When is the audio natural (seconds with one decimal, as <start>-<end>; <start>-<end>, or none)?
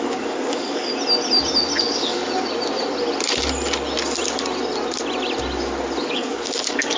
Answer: 0.9-1.8; 2.2-6.0